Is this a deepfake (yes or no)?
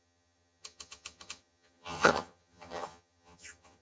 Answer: yes